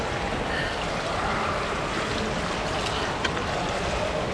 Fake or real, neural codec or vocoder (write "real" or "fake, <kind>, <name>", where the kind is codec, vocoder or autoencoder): real